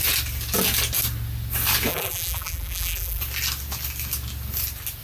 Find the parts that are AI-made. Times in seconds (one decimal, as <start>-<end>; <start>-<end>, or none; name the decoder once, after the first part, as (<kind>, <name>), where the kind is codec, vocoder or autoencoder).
1.9-3.2 (vocoder, BigVGAN v2)